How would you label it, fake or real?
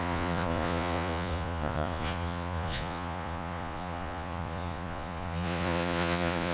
fake